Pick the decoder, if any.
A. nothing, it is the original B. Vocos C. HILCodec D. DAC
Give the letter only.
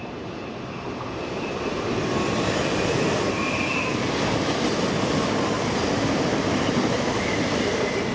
A